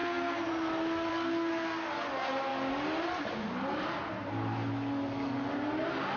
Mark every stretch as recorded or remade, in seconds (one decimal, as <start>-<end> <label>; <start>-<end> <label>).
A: 0.0-6.2 recorded

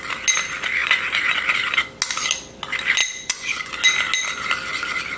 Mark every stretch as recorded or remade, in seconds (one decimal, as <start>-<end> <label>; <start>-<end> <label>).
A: 0.0-0.8 recorded; 0.8-1.4 remade; 1.4-3.0 recorded; 3.0-3.7 remade; 3.7-5.2 recorded